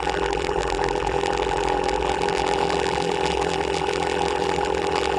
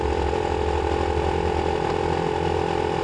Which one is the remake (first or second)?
first